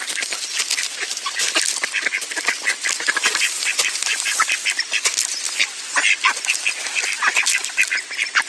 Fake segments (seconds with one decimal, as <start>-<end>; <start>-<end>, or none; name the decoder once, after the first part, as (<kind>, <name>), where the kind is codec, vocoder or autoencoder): none